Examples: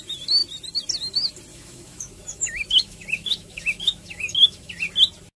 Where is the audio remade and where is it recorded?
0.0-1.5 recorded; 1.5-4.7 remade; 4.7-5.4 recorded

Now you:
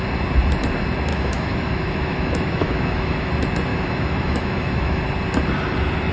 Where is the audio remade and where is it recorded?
0.0-1.1 recorded; 1.1-3.3 remade; 3.3-3.7 recorded; 3.7-5.0 remade; 5.0-6.1 recorded

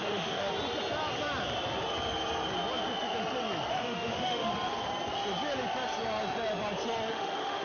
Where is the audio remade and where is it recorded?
0.0-0.5 remade; 0.5-3.7 recorded; 3.7-4.5 remade; 4.5-7.1 recorded; 7.1-7.6 remade